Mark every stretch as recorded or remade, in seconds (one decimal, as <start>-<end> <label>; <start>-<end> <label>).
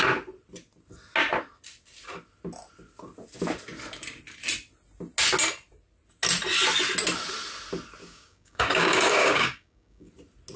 0.0-8.0 recorded; 8.0-10.1 remade; 10.1-10.6 recorded